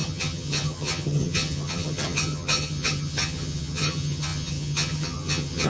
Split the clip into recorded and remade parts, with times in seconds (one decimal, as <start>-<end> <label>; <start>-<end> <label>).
0.0-5.7 remade